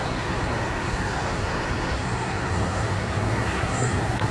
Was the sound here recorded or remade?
remade